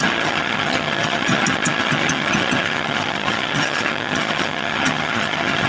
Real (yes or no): no